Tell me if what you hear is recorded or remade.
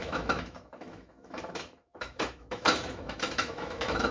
remade